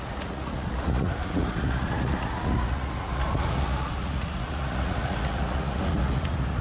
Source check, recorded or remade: remade